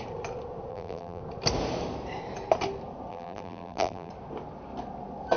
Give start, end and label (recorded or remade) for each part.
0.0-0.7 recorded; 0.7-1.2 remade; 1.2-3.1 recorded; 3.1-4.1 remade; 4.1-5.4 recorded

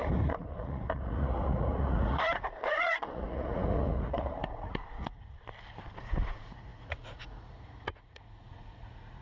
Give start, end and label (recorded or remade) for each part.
0.0-5.2 remade; 5.2-6.0 recorded; 6.0-9.2 remade

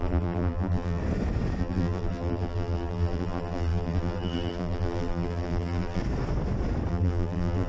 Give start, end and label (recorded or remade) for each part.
0.0-1.0 remade; 1.0-1.6 recorded; 1.6-6.0 remade; 6.0-6.9 recorded; 6.9-7.7 remade

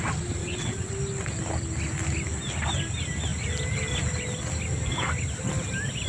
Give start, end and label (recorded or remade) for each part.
0.0-0.4 recorded; 0.4-0.9 remade; 0.9-6.1 recorded

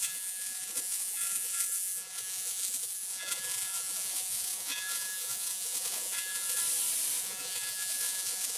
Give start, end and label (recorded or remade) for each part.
0.0-6.6 remade; 6.6-7.2 recorded; 7.2-8.6 remade

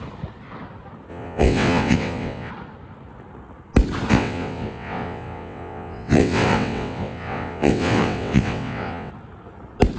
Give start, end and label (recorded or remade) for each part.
0.0-1.1 recorded; 1.1-2.5 remade; 2.5-4.1 recorded; 4.1-9.1 remade; 9.1-10.0 recorded

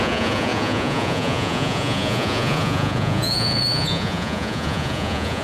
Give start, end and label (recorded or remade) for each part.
0.0-5.4 remade

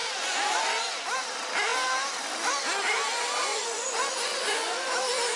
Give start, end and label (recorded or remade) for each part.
0.0-0.6 remade; 0.6-3.5 recorded; 3.5-5.0 remade; 5.0-5.4 recorded